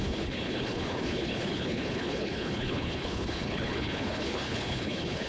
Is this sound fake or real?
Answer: fake